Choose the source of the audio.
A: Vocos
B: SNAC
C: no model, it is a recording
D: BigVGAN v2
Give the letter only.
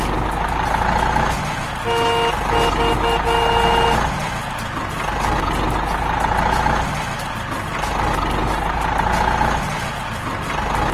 C